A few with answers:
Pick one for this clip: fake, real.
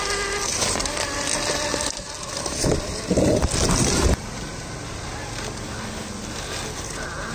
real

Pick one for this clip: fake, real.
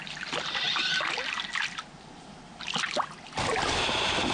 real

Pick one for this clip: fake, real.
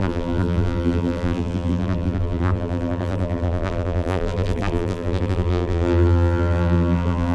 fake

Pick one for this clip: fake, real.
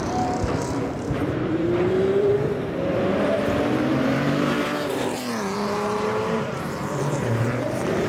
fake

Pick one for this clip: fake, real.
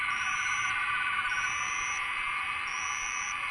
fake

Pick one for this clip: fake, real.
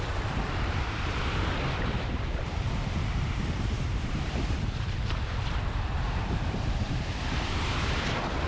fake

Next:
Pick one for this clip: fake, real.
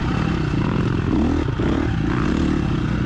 real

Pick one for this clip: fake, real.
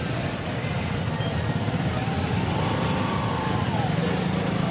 real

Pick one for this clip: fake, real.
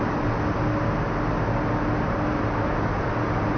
real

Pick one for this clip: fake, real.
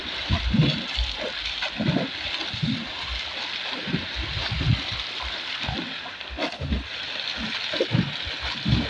real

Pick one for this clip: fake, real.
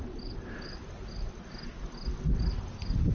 real